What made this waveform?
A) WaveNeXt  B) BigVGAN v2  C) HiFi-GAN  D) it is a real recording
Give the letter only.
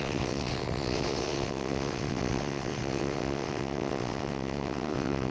A